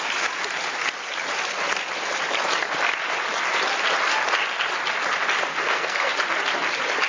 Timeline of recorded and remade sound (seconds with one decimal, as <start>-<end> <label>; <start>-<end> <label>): 0.0-5.5 recorded; 5.5-6.1 remade; 6.1-7.1 recorded

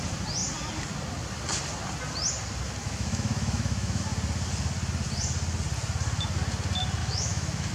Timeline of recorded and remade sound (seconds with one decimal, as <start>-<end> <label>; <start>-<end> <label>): 0.0-2.8 recorded; 2.8-4.0 remade; 4.0-7.0 recorded; 7.0-7.7 remade

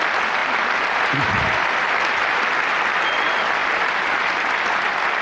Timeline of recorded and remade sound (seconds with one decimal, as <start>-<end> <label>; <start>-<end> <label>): 0.0-3.6 recorded; 3.6-4.5 remade; 4.5-5.2 recorded

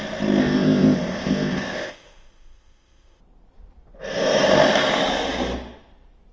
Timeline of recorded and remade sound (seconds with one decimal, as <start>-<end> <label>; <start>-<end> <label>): 0.0-0.4 recorded; 0.4-3.2 remade; 3.2-6.3 recorded

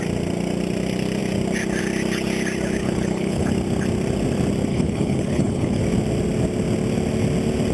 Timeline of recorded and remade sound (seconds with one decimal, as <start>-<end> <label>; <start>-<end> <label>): 0.0-2.8 recorded; 2.8-3.5 remade; 3.5-4.7 recorded; 4.7-5.8 remade; 5.8-7.7 recorded

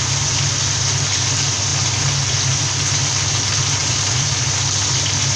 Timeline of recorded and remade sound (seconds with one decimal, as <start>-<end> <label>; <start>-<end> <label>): 0.0-3.8 recorded; 3.8-4.4 remade; 4.4-5.4 recorded

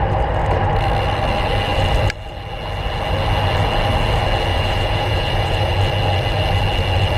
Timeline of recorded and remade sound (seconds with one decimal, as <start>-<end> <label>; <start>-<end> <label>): 0.0-4.5 recorded; 4.5-5.7 remade; 5.7-7.2 recorded

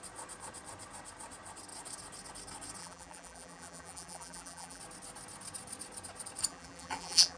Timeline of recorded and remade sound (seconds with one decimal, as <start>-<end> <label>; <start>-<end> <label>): 0.0-2.8 recorded; 2.8-4.8 remade; 4.8-6.5 recorded; 6.5-7.4 remade